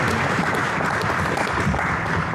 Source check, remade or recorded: remade